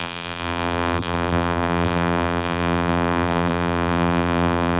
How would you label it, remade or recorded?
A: remade